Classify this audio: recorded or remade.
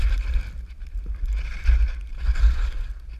recorded